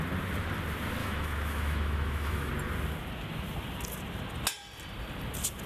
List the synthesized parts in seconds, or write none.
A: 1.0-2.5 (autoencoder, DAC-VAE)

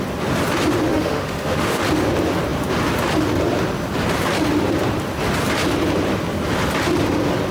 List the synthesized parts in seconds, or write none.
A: 0.9-1.8 (autoencoder, DAC-VAE)